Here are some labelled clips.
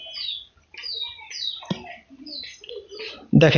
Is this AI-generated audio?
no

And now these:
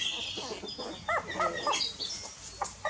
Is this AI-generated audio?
no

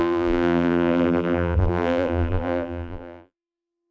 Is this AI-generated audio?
yes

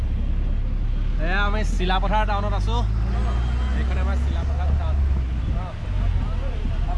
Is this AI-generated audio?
no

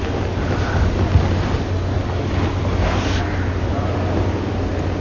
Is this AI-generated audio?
no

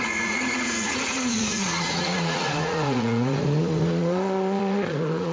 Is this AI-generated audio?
yes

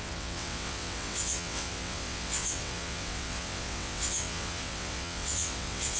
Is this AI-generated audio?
yes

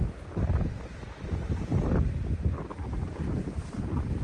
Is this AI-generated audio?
no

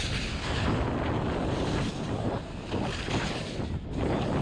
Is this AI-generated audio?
no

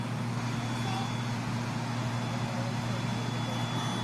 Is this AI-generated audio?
no